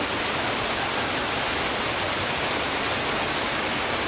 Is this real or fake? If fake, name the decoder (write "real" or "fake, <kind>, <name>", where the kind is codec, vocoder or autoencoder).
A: fake, vocoder, BigVGAN v2